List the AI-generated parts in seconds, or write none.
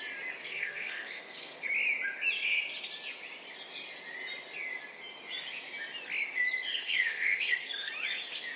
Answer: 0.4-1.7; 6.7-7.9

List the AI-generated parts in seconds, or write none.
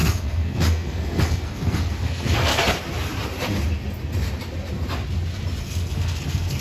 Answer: 0.0-2.5; 5.6-6.6